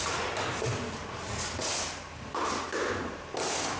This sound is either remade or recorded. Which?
recorded